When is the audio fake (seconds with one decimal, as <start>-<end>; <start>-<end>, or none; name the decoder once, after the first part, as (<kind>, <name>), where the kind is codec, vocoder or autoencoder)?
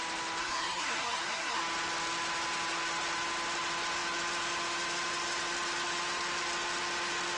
0.4-1.6 (codec, SNAC)